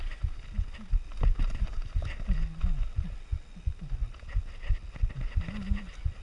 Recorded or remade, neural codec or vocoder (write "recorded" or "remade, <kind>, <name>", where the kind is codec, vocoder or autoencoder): recorded